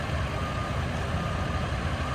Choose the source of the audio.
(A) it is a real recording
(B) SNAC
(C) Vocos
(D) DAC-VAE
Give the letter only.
A